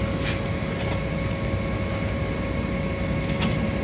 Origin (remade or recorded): recorded